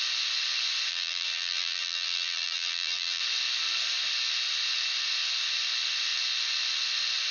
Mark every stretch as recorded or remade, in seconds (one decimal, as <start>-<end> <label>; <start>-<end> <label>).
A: 0.0-0.9 recorded; 0.9-3.2 remade; 3.2-7.3 recorded